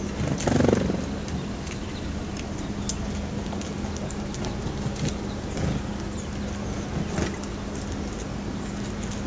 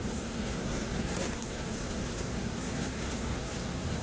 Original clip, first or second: first